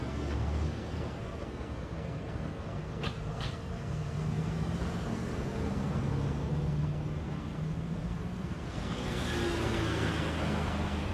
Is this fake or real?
fake